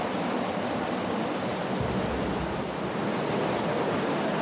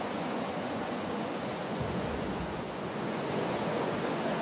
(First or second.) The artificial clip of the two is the second